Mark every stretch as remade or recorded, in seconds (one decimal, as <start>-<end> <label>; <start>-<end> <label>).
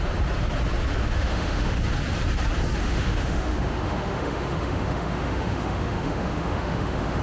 0.0-1.0 recorded; 1.0-1.8 remade; 1.8-2.8 recorded; 2.8-7.2 remade